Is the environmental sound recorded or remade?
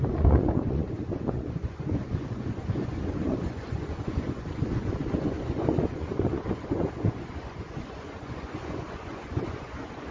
remade